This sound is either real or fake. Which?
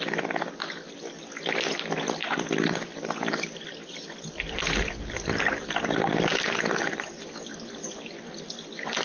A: real